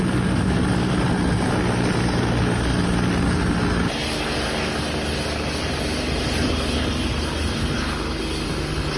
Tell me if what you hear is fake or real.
real